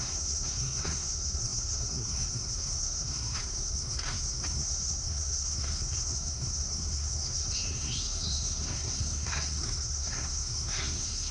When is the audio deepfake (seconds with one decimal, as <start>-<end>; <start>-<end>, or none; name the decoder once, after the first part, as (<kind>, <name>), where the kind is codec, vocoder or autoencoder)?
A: 0.0-11.3 (codec, SNAC)